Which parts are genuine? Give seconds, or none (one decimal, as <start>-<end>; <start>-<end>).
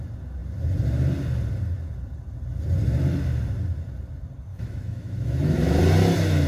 0.0-4.5; 5.8-6.5